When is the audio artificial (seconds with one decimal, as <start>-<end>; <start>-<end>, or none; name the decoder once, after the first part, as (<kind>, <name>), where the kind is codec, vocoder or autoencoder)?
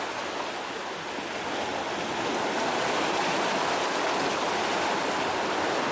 none